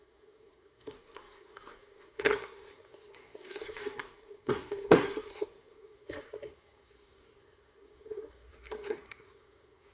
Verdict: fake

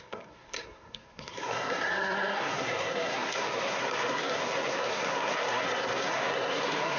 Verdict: fake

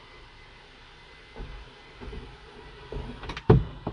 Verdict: real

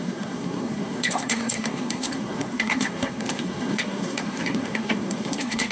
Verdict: fake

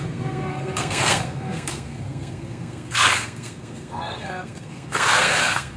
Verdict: fake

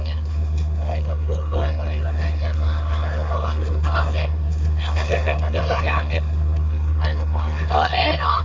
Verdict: fake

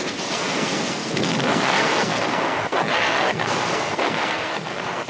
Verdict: fake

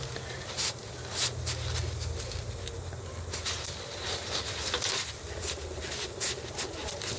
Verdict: real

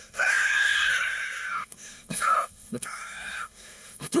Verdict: fake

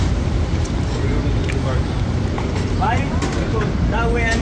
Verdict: real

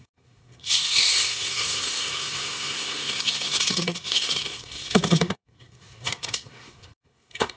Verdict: fake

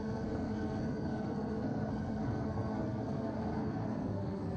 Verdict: fake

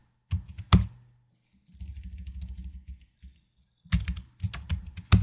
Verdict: real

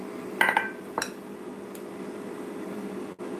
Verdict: real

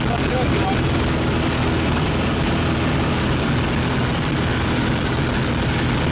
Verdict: real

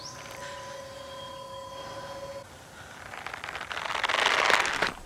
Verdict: real